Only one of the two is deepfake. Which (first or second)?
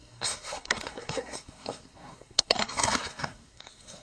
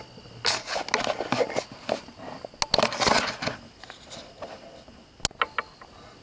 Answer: first